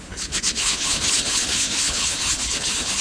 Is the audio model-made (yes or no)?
yes